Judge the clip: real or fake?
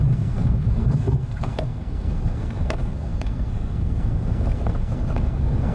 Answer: fake